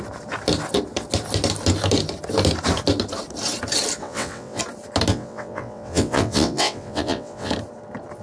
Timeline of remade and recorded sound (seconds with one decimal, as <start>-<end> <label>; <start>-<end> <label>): 0.0-4.0 recorded; 4.0-4.6 remade; 4.6-5.1 recorded; 5.1-7.5 remade; 7.5-8.2 recorded

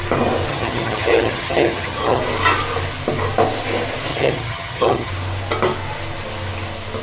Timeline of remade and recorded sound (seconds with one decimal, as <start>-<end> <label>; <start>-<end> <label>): 0.0-0.5 recorded; 0.5-2.2 remade; 2.2-4.1 recorded; 4.1-5.1 remade; 5.1-7.0 recorded

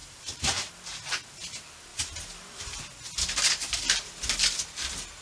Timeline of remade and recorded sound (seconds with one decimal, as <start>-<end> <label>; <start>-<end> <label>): 0.0-0.7 remade; 0.7-1.9 recorded; 1.9-2.8 remade; 2.8-5.2 recorded

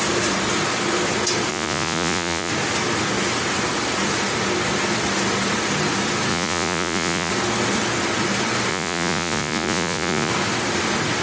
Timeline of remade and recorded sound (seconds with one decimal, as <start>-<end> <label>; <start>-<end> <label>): 0.0-1.5 recorded; 1.5-2.5 remade; 2.5-6.3 recorded; 6.3-7.3 remade; 7.3-8.7 recorded; 8.7-10.3 remade; 10.3-11.2 recorded

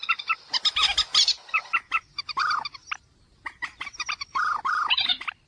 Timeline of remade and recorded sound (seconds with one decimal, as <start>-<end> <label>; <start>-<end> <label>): 0.0-5.5 recorded

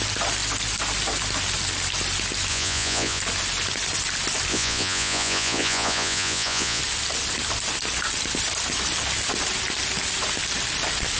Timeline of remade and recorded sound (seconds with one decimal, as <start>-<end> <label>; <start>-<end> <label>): 0.0-2.5 recorded; 2.5-3.2 remade; 3.2-4.5 recorded; 4.5-6.8 remade; 6.8-11.2 recorded